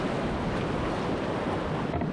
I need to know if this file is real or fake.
real